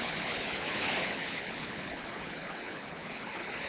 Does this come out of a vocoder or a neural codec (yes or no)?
yes